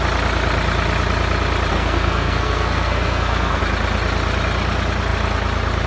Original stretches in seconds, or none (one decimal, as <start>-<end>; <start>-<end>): 0.0-1.7; 3.6-5.9